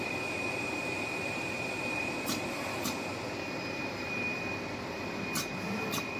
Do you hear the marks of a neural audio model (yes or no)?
yes